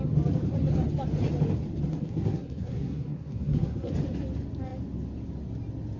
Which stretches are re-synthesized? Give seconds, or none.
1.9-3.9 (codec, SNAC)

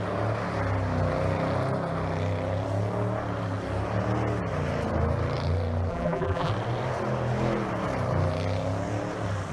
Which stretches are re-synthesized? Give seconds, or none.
5.9-6.5 (vocoder, BigVGAN v2)

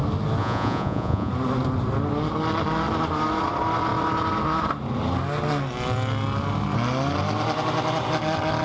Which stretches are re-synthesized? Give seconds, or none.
0.4-1.3 (vocoder, Vocos)

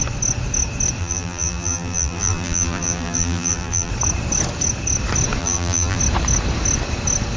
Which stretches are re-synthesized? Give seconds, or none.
1.0-3.9 (vocoder, BigVGAN v2); 5.4-6.0

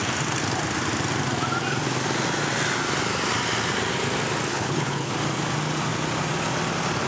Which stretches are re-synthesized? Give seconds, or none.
4.5-5.1 (codec, HILCodec)

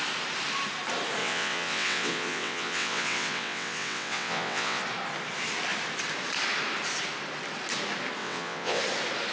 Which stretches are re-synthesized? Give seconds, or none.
1.2-4.8 (vocoder, WaveNeXt); 8.2-8.8